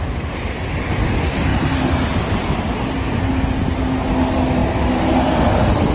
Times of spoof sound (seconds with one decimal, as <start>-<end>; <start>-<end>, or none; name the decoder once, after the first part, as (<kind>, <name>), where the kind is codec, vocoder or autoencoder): none